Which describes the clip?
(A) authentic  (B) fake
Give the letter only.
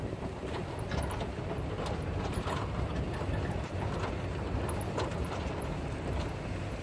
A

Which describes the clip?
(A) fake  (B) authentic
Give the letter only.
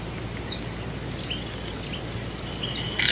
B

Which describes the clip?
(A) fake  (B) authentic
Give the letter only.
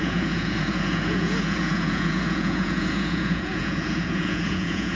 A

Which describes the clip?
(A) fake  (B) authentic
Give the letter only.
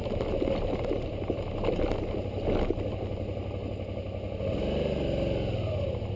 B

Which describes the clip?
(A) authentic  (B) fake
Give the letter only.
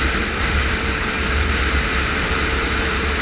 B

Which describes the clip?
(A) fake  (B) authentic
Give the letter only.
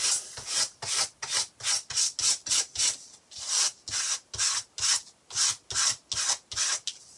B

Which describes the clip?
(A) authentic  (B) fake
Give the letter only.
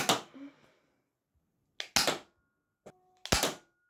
A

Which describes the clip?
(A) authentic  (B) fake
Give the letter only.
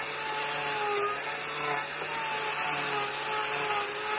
A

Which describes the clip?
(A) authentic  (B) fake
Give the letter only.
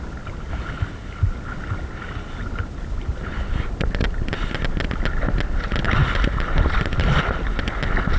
A